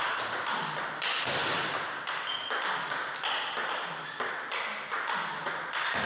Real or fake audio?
real